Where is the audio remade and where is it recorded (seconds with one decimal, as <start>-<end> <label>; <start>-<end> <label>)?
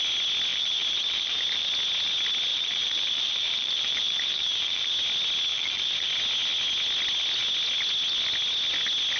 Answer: 0.0-0.5 recorded; 0.5-1.7 remade; 1.7-2.5 recorded; 2.5-4.9 remade; 4.9-5.5 recorded; 5.5-6.1 remade; 6.1-9.2 recorded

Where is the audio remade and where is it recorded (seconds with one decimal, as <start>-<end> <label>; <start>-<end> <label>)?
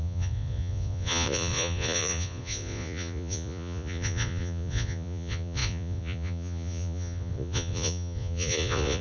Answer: 0.0-9.0 remade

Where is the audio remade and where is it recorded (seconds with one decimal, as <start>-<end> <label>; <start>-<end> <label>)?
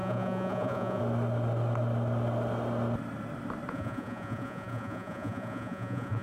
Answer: 0.0-1.0 remade; 1.0-3.7 recorded; 3.7-6.2 remade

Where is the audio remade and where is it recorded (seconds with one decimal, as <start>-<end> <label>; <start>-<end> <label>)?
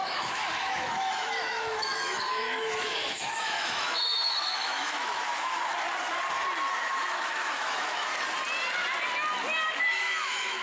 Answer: 0.0-5.7 remade; 5.7-6.7 recorded; 6.7-8.1 remade; 8.1-9.8 recorded; 9.8-10.6 remade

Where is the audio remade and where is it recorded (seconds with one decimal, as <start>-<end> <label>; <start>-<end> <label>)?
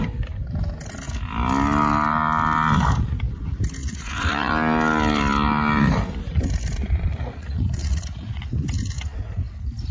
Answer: 0.0-3.8 recorded; 3.8-4.5 remade; 4.5-7.2 recorded; 7.2-8.5 remade; 8.5-9.9 recorded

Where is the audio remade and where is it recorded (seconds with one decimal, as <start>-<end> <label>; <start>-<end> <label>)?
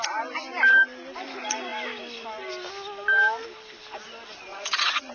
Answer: 0.0-4.5 recorded; 4.5-5.1 remade